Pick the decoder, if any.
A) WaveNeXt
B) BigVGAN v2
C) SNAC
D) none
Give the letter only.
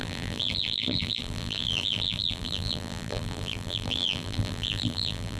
B